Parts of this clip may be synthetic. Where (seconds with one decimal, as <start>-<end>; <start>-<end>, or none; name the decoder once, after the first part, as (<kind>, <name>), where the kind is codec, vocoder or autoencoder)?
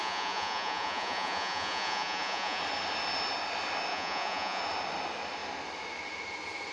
0.0-2.6 (vocoder, Vocos); 3.9-4.6